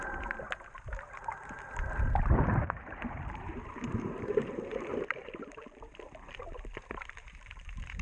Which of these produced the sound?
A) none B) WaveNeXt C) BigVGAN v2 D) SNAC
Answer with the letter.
C